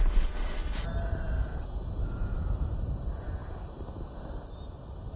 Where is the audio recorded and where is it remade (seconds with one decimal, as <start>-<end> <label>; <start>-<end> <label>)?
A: 0.0-0.6 remade; 0.6-2.0 recorded; 2.0-5.2 remade